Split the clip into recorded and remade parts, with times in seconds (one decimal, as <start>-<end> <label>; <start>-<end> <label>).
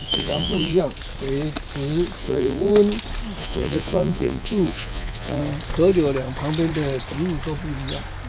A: 0.0-0.8 remade; 0.8-2.2 recorded; 2.2-2.7 remade; 2.7-3.4 recorded; 3.4-5.4 remade; 5.4-8.3 recorded